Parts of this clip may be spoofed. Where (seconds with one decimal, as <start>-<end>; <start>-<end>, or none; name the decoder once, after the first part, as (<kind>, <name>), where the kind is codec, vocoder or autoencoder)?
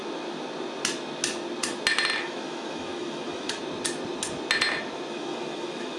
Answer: 2.2-3.6 (autoencoder, DAC-VAE); 5.1-6.0